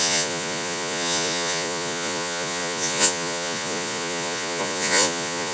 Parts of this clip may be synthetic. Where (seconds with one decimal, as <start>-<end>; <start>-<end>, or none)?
0.0-5.5

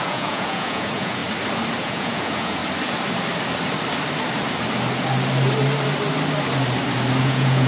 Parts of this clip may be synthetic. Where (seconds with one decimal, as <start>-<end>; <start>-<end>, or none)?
0.0-1.2; 1.8-2.6; 7.2-7.7